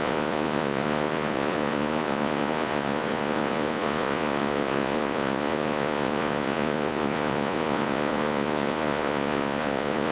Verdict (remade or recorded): remade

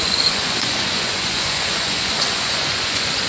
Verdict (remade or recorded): remade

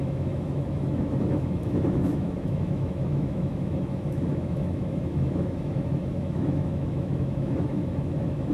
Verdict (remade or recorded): remade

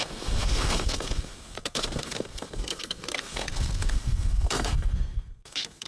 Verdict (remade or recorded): remade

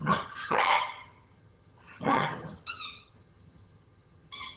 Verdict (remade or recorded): remade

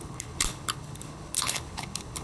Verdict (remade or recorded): remade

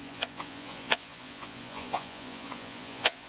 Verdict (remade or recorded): remade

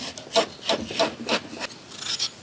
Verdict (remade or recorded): recorded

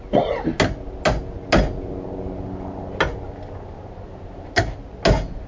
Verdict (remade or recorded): recorded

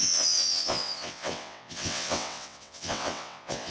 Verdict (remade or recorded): remade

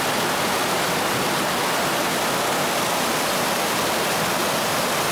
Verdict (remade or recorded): recorded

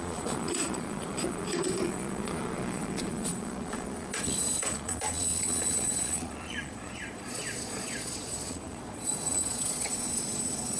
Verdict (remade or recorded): remade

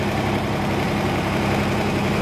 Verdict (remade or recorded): remade